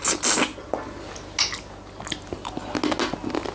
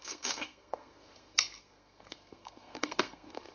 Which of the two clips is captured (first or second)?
first